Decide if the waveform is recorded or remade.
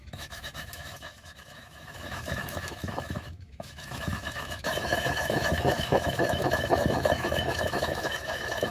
remade